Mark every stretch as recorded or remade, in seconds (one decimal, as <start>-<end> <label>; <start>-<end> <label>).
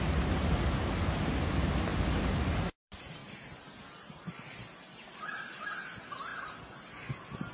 0.0-7.5 recorded